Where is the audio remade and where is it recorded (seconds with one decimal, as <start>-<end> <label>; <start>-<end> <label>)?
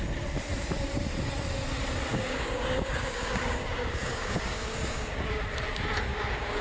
0.0-2.1 recorded; 2.1-5.4 remade; 5.4-6.1 recorded; 6.1-6.6 remade